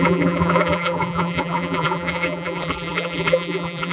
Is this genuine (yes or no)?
no